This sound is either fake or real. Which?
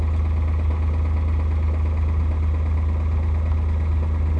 real